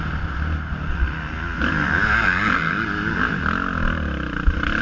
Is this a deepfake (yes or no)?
no